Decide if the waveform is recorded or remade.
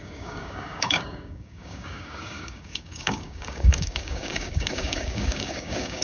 remade